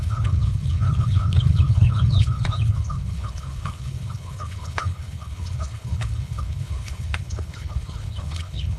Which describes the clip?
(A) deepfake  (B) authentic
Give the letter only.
A